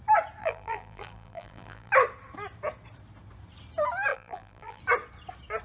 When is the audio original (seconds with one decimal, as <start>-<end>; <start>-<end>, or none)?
0.0-0.4; 1.9-4.1; 4.8-5.6